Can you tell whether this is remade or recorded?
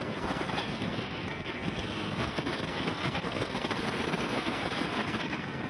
remade